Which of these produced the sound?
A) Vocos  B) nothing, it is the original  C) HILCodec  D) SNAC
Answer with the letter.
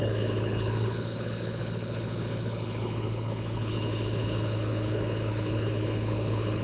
C